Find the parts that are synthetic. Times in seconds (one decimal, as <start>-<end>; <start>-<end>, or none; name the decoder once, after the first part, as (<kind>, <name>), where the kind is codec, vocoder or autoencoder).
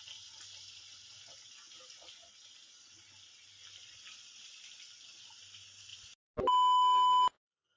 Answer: none